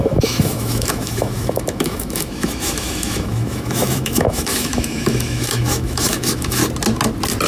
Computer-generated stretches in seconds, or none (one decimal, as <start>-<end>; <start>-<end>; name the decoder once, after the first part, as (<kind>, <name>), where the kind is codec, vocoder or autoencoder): 0.0-6.6 (autoencoder, DAC-VAE)